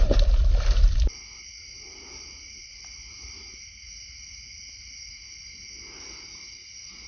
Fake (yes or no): no